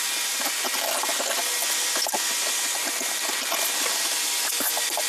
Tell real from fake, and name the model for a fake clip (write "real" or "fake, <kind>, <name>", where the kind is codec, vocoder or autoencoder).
real